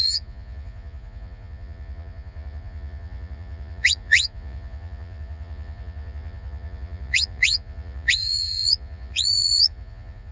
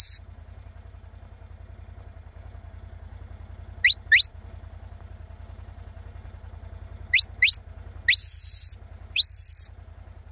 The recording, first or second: second